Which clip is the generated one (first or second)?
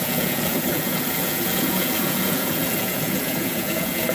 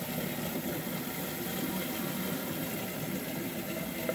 first